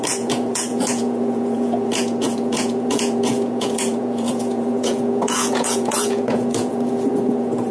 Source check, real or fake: fake